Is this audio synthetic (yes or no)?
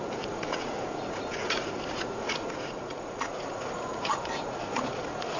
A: yes